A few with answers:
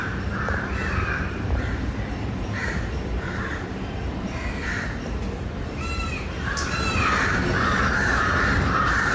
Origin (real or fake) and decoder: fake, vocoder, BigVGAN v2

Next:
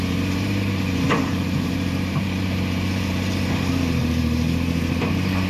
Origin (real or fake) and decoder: fake, vocoder, BigVGAN v2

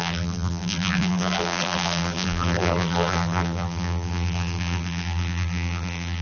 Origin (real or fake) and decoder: fake, vocoder, BigVGAN v2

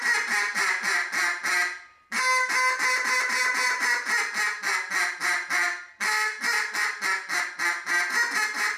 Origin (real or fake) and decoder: real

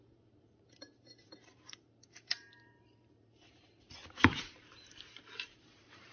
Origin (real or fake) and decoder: fake, vocoder, BigVGAN v2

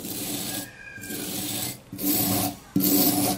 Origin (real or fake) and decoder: real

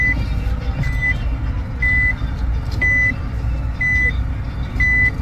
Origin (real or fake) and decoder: real